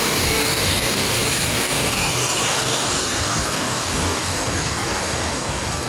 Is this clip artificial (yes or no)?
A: yes